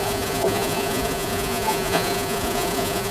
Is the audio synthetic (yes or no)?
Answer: yes